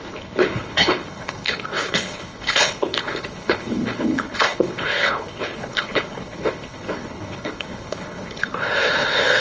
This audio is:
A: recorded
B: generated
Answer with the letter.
B